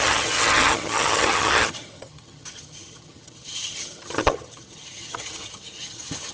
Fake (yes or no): yes